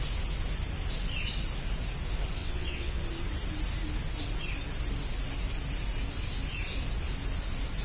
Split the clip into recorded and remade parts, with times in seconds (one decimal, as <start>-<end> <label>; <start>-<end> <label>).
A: 0.0-2.4 recorded; 2.4-3.0 remade; 3.0-7.8 recorded